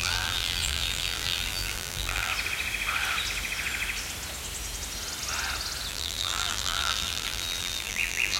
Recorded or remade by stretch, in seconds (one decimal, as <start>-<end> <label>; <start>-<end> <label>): 0.0-2.3 remade; 2.3-5.9 recorded; 5.9-8.4 remade